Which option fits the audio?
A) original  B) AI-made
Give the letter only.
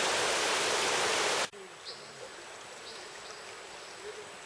A